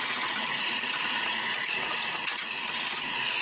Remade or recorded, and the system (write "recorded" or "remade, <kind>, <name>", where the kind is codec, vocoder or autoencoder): remade, vocoder, Vocos